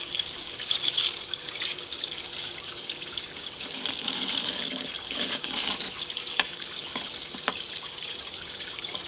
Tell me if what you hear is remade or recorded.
remade